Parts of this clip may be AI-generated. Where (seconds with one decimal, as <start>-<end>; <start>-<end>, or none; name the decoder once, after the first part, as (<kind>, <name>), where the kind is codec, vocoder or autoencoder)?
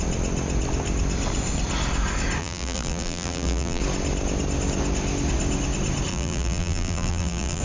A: 2.4-3.8 (vocoder, BigVGAN v2); 6.1-7.6